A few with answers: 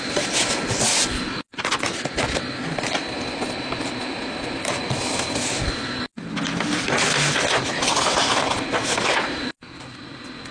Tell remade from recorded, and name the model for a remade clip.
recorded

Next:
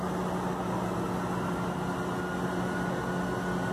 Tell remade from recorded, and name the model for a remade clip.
recorded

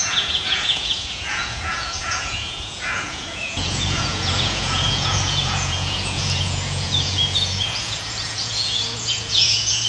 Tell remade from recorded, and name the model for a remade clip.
remade, vocoder, Vocos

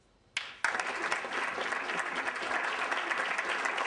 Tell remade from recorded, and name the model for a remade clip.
recorded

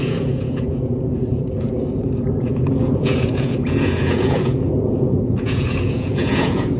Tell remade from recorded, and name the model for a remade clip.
remade, vocoder, Vocos